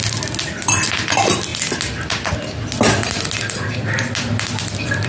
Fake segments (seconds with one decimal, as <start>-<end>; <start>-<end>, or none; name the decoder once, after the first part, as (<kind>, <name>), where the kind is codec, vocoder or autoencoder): none